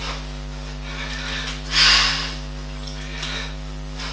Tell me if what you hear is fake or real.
real